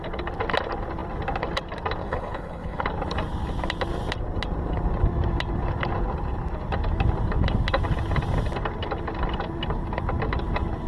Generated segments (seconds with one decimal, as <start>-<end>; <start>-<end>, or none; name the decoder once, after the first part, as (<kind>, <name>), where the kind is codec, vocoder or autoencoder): 2.0-2.8 (codec, HILCodec)